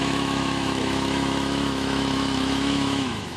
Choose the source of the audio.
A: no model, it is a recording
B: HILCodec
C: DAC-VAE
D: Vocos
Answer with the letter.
C